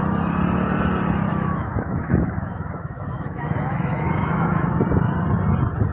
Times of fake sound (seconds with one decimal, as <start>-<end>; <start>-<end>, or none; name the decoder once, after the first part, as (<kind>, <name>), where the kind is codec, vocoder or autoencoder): 1.3-4.8 (autoencoder, DAC-VAE)